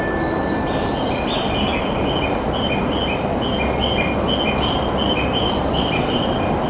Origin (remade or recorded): recorded